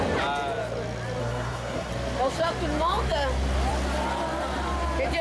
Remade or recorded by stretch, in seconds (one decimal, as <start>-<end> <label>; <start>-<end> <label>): 0.0-1.2 recorded; 1.2-1.9 remade; 1.9-5.2 recorded